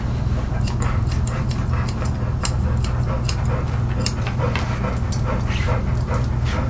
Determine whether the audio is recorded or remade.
recorded